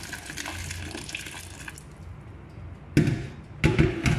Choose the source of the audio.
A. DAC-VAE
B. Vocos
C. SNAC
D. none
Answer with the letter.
D